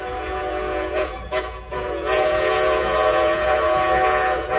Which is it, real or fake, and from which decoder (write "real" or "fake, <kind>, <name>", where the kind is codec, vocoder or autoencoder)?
fake, vocoder, Vocos